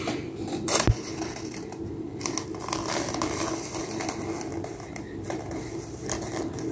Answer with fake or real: fake